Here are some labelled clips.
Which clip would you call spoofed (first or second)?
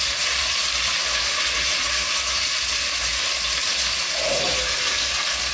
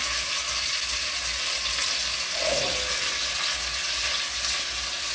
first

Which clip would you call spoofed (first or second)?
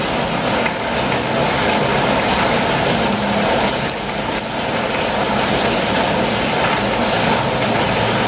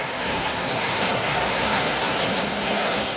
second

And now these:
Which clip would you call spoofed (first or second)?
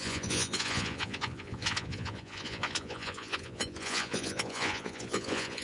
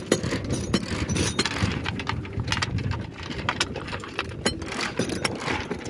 first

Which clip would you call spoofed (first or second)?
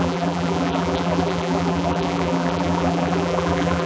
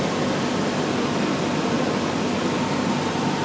first